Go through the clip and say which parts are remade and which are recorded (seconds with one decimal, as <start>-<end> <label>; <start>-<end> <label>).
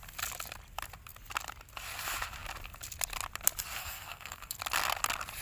0.0-3.8 recorded; 3.8-4.6 remade; 4.6-5.4 recorded